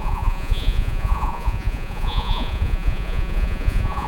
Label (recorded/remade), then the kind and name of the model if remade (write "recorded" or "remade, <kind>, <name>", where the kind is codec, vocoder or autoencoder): remade, vocoder, Vocos